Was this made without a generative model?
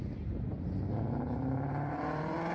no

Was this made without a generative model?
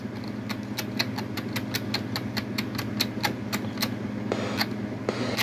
yes